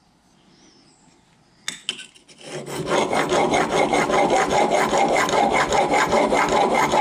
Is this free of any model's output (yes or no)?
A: yes